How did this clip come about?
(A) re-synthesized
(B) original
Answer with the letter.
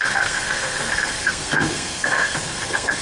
A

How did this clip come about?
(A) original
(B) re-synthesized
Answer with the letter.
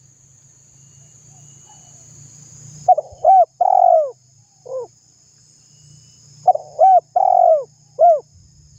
A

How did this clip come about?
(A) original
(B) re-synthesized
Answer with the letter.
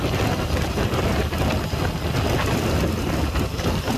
A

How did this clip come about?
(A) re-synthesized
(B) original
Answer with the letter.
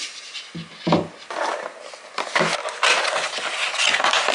B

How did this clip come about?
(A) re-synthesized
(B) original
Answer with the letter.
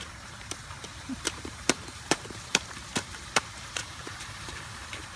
A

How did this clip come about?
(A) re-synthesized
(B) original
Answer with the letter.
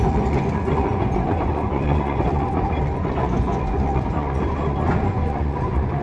A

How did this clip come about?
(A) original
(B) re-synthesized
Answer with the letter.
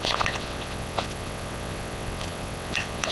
B